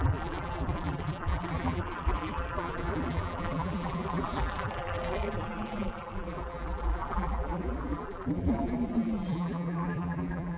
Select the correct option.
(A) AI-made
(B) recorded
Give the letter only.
A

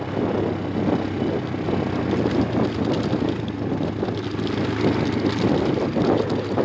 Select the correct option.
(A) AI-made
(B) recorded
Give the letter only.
B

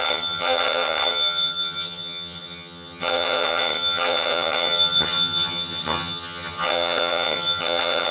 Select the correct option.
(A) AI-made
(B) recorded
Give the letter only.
A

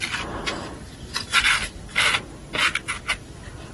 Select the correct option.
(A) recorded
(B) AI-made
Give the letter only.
A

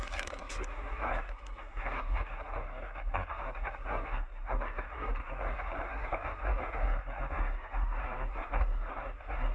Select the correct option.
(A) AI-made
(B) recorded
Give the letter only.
A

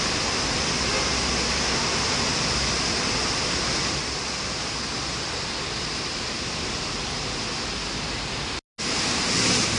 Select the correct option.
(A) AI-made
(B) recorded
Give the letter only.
B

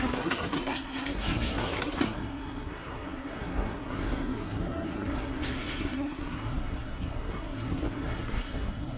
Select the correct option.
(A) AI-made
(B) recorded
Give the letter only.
A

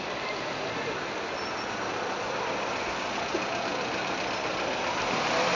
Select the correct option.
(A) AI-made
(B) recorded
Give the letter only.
B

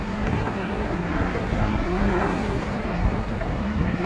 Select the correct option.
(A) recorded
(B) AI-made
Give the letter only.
B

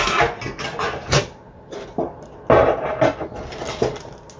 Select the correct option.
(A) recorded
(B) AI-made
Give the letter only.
A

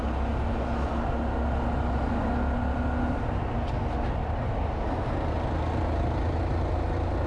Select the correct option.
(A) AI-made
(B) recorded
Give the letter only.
B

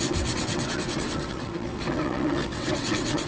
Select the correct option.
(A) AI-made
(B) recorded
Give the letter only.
A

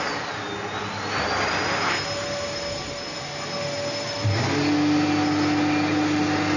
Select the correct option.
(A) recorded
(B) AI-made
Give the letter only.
A